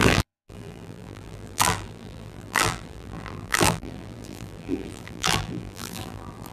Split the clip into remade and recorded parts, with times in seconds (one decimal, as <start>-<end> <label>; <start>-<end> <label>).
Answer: 0.0-6.5 remade